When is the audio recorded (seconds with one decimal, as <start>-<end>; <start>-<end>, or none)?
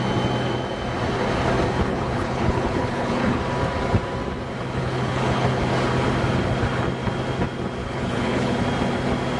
0.0-1.9; 3.4-4.8; 5.6-7.8; 8.5-9.4